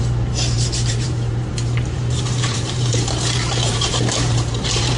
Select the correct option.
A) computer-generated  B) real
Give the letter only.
A